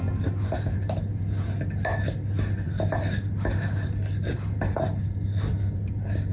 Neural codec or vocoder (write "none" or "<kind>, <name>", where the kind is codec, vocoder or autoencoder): none